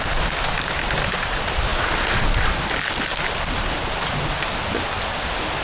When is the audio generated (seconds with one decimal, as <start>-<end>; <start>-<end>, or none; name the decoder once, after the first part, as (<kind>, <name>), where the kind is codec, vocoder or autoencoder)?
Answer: none

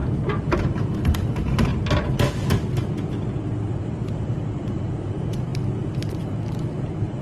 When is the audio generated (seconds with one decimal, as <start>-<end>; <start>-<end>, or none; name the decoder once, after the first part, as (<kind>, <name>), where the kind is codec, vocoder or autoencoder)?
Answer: 0.6-1.7 (vocoder, BigVGAN v2); 3.8-5.5; 6.1-7.2

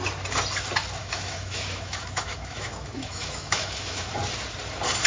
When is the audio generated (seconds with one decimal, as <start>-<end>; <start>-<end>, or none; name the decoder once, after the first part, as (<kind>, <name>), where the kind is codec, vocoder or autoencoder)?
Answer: 1.0-4.1 (autoencoder, DAC-VAE)

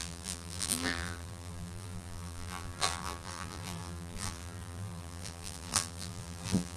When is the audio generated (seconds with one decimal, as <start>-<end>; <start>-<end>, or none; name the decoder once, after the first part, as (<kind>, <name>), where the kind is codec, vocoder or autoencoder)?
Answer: 0.0-6.8 (vocoder, BigVGAN v2)

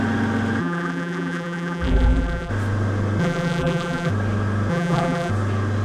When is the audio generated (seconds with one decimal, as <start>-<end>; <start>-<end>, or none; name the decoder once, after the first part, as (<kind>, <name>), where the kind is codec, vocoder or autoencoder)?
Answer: 0.6-2.5 (vocoder, BigVGAN v2); 3.2-4.1; 4.7-5.3

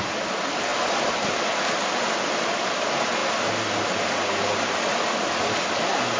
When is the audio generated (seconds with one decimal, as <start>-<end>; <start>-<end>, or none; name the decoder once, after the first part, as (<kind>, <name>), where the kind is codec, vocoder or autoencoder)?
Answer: none

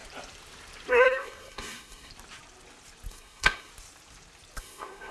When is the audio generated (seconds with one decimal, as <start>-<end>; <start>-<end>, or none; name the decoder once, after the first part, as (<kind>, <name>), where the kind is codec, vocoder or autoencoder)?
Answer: 0.9-2.1 (codec, SNAC); 3.1-3.7; 4.6-5.1

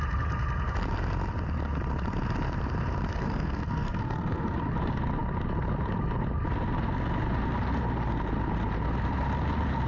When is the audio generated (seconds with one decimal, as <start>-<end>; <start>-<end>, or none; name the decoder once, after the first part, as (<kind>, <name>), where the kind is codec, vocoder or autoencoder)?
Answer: 3.1-4.6 (codec, SNAC)